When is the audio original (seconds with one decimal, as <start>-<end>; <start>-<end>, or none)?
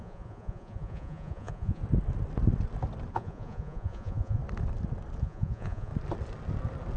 1.8-3.1; 4.4-5.2; 5.9-7.0